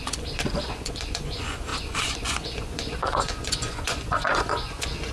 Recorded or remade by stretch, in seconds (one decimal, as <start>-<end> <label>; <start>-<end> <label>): 0.0-5.1 remade